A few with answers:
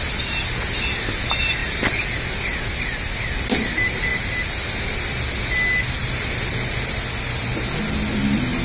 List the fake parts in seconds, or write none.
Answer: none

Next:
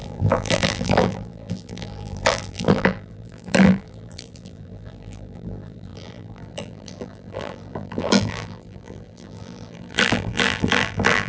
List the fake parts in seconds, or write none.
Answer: 0.0-11.3 (vocoder, BigVGAN v2)

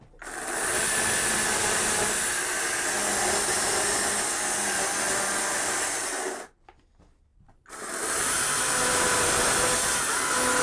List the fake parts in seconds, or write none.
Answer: 7.3-9.4 (vocoder, BigVGAN v2)

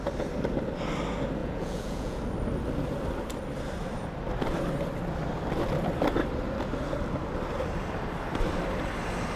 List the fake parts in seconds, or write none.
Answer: 1.4-2.2 (vocoder, Vocos)

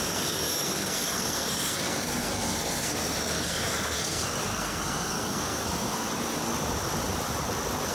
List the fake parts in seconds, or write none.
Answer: 0.0-6.1 (codec, SNAC)

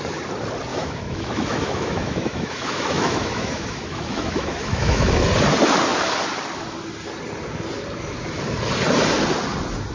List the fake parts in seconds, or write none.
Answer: 0.7-5.1 (autoencoder, DAC-VAE)

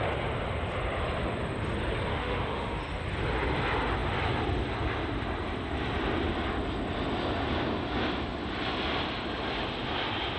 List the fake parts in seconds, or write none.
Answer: 2.1-2.8 (autoencoder, DAC-VAE)